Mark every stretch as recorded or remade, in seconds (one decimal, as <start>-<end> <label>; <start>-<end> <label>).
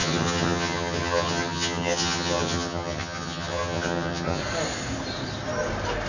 0.0-4.4 remade; 4.4-6.1 recorded